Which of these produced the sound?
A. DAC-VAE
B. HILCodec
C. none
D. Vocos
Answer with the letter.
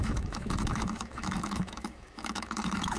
A